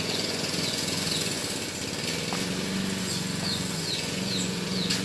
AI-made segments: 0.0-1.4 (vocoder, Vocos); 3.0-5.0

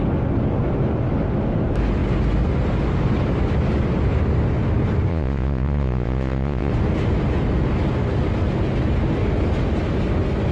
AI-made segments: 5.1-6.7 (vocoder, Vocos)

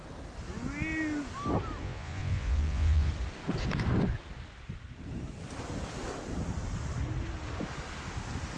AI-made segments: 1.8-3.1 (vocoder, Vocos)

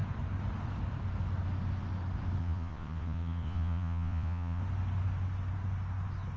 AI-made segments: 2.4-4.6 (vocoder, Vocos)